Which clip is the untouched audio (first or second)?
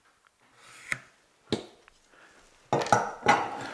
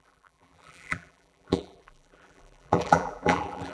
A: first